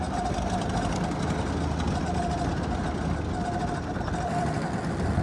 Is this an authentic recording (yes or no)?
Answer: yes